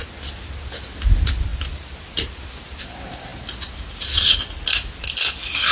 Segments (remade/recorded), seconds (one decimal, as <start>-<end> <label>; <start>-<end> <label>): 0.0-5.7 recorded